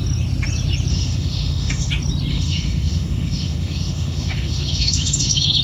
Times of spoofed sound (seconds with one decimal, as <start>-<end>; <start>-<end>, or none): 0.9-1.9; 2.3-5.6